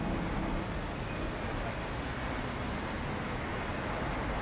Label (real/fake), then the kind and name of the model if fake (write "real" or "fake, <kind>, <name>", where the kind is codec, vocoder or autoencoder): real